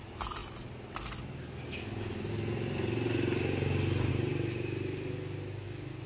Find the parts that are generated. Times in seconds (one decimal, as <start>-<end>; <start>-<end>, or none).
none